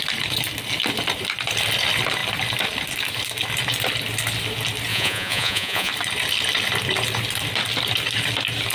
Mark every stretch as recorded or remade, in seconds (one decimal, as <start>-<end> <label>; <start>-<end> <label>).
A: 0.0-4.9 recorded; 4.9-5.9 remade; 5.9-8.7 recorded